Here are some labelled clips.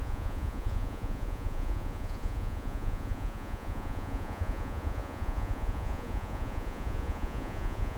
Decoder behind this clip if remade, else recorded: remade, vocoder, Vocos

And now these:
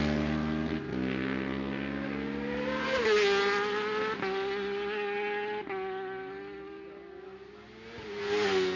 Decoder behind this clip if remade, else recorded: recorded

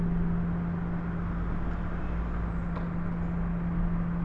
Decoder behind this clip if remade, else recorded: recorded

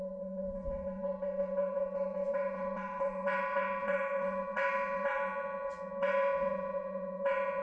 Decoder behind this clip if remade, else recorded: remade, vocoder, WaveNeXt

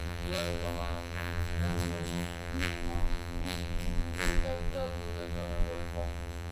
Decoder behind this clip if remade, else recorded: remade, vocoder, BigVGAN v2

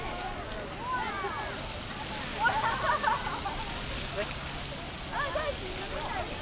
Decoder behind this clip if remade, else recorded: recorded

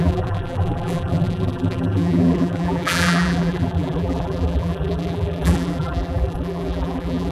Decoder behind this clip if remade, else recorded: remade, vocoder, BigVGAN v2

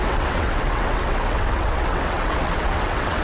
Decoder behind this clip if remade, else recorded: remade, vocoder, WaveNeXt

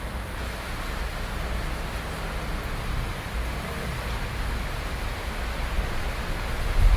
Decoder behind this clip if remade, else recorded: recorded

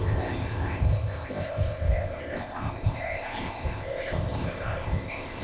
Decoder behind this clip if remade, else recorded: remade, codec, ZipCodec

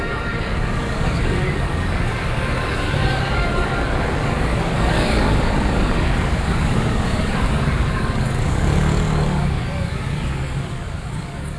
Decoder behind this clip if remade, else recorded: remade, codec, DAC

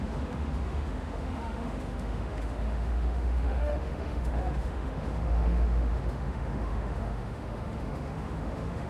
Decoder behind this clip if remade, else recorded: remade, autoencoder, DAC-VAE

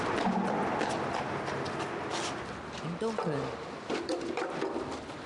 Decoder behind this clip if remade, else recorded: recorded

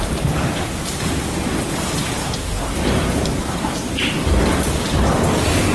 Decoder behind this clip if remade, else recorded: recorded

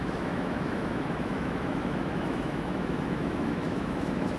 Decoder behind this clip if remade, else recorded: remade, autoencoder, DAC-VAE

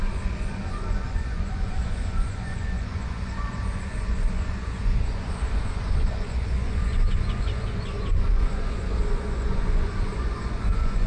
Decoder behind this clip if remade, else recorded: remade, vocoder, Vocos